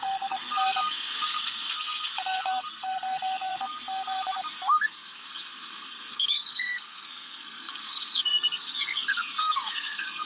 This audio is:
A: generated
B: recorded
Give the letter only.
A